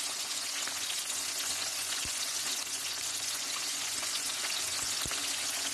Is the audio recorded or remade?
remade